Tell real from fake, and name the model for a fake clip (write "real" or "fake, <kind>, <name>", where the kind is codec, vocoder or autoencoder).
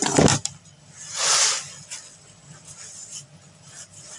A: real